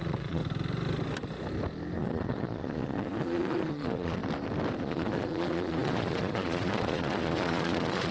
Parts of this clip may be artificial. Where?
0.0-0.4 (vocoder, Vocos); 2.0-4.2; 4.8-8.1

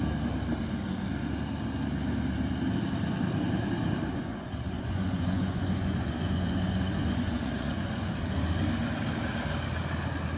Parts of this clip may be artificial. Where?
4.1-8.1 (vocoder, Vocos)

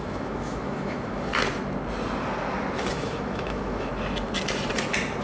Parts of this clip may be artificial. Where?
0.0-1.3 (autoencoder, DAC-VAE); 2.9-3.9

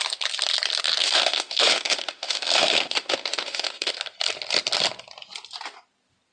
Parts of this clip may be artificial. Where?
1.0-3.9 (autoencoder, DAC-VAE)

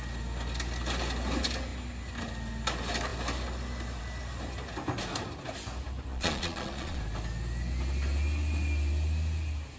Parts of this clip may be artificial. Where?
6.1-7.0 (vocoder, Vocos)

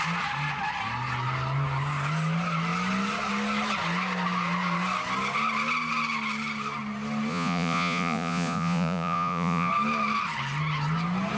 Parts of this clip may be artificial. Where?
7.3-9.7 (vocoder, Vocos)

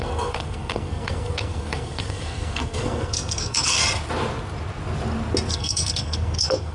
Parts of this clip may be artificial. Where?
0.0-3.8 (codec, SNAC); 5.5-6.7

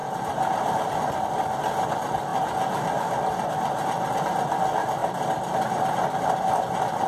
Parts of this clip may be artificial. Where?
none